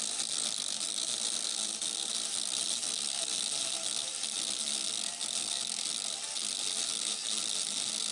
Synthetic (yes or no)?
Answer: no